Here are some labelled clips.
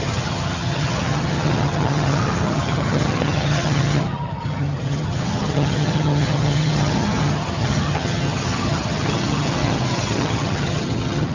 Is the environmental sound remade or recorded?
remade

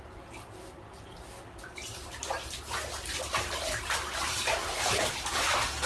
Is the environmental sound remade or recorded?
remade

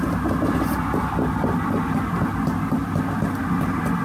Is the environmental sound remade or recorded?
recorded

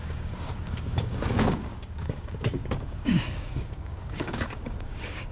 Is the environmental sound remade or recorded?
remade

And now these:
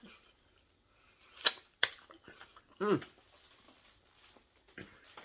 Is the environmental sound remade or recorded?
recorded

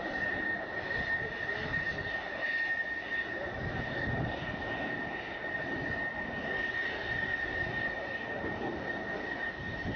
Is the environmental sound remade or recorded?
recorded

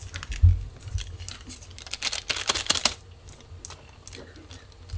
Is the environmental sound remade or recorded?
recorded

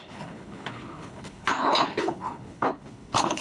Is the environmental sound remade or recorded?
remade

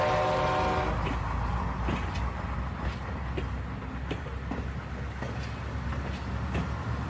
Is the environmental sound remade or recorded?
recorded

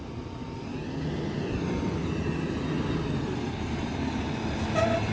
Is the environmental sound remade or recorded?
recorded